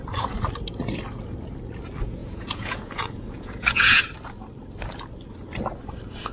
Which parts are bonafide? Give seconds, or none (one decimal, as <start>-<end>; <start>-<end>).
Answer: 0.0-2.2; 4.0-6.3